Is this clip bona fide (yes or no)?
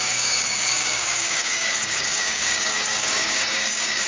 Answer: no